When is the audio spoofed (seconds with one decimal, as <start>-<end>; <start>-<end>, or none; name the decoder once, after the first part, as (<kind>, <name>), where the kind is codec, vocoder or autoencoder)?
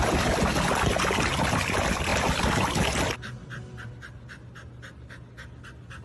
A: none